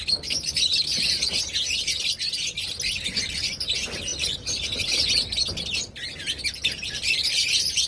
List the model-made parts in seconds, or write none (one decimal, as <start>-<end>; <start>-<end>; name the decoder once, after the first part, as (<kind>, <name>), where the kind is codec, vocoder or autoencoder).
none